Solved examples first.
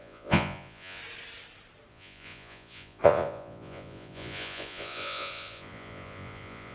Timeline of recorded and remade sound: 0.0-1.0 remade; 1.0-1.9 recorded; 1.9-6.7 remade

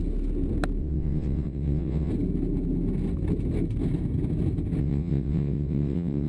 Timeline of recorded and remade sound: 0.0-0.8 recorded; 0.8-2.1 remade; 2.1-4.8 recorded; 4.8-6.3 remade

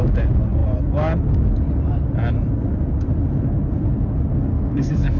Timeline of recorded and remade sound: 0.0-4.5 recorded; 4.5-5.2 remade